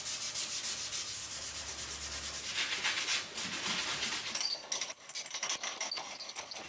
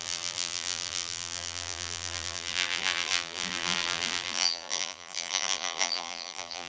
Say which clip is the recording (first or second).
first